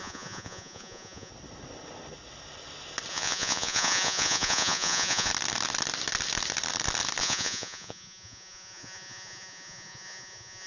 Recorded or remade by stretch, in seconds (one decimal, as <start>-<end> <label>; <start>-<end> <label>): 0.0-1.3 remade; 1.3-3.1 recorded; 3.1-5.3 remade; 5.3-7.2 recorded; 7.2-10.7 remade